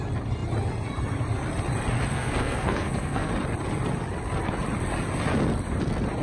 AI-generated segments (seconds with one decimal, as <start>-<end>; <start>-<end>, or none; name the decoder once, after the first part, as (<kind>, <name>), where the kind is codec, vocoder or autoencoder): 2.1-3.3 (codec, SNAC)